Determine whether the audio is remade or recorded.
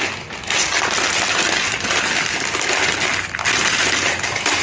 recorded